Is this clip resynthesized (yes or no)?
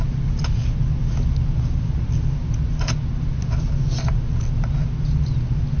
no